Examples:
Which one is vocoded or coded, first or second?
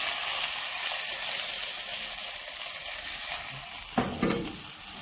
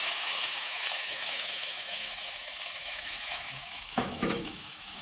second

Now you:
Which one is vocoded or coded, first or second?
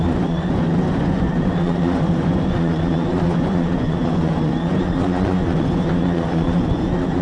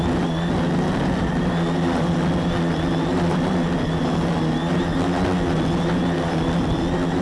first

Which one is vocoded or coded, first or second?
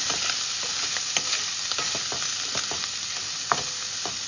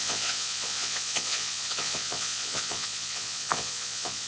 second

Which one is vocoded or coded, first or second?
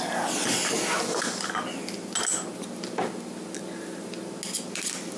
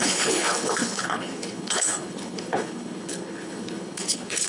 second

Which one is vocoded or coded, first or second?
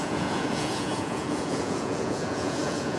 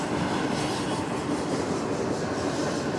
first